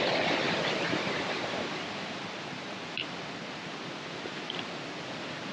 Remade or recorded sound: recorded